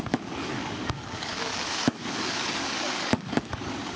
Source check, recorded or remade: remade